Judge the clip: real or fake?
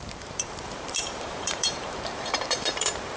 fake